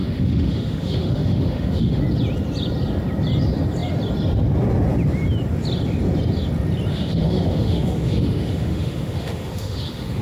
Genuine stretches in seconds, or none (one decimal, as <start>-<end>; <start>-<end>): 2.0-6.9